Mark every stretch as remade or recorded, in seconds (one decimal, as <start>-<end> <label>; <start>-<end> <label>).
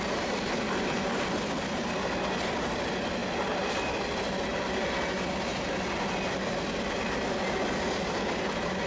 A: 0.0-8.9 recorded